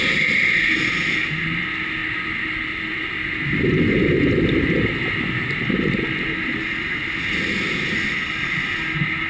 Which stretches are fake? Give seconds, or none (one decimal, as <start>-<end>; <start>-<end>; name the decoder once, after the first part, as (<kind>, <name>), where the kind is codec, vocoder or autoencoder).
none